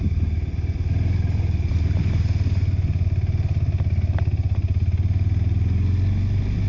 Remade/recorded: recorded